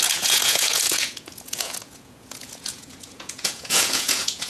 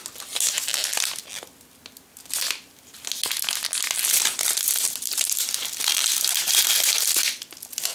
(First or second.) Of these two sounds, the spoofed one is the first